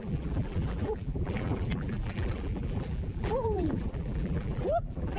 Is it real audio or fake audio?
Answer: fake